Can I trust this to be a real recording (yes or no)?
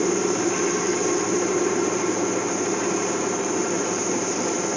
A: no